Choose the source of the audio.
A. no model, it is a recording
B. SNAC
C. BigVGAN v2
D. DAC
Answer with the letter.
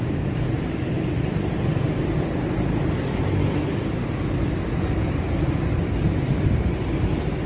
A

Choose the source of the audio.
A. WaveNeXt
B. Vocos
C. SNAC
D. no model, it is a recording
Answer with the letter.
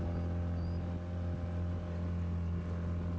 D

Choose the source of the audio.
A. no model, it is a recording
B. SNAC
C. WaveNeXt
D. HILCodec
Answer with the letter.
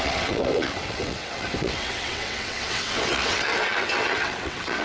C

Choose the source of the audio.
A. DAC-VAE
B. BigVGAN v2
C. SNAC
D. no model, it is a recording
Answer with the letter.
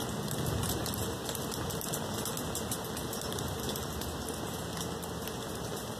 D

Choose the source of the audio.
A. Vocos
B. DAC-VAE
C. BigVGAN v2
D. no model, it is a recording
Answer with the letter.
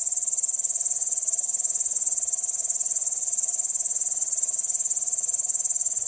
D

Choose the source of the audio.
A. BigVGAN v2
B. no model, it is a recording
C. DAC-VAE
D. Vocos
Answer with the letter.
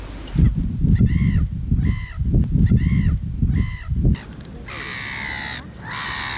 B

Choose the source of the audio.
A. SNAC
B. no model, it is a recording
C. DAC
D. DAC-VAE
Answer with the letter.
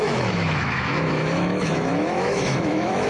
D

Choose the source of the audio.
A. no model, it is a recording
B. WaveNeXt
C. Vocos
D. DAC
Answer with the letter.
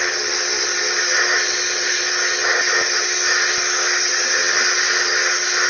A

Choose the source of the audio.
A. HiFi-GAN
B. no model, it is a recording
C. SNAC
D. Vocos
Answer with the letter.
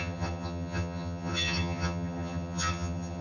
A